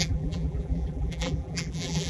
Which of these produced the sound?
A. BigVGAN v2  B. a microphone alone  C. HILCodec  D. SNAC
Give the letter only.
A